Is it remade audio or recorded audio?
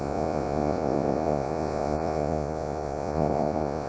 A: remade